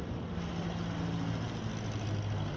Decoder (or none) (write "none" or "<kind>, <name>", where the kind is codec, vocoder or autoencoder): none